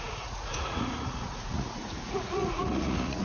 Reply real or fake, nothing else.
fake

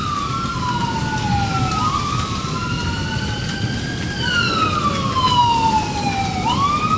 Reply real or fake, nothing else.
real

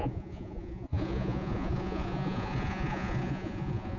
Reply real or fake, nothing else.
fake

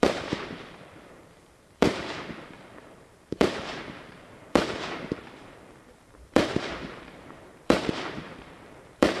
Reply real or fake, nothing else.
fake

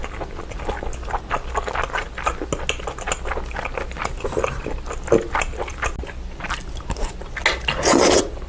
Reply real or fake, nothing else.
real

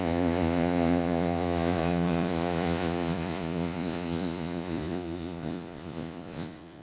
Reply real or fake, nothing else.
fake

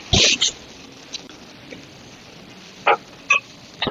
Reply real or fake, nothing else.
real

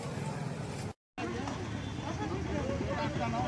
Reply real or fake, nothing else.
real